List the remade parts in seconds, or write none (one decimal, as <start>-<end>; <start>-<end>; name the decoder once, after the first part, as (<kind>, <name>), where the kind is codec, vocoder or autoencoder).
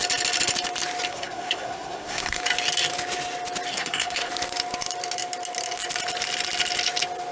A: 1.1-2.4 (codec, SNAC); 3.7-4.3